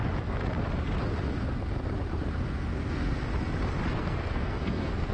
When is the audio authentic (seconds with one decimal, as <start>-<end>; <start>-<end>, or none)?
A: 0.0-2.7; 3.3-3.9